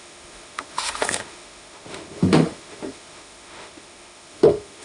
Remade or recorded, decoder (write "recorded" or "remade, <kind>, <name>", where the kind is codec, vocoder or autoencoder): remade, autoencoder, DAC-VAE